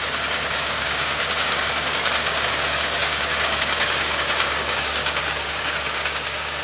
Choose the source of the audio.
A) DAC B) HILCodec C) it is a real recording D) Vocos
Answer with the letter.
A